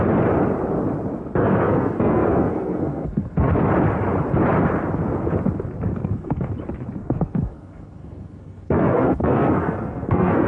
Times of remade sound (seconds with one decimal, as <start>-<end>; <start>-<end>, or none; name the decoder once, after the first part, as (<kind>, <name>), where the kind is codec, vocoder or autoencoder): 1.4-3.5 (codec, SNAC); 5.9-6.5; 7.0-10.5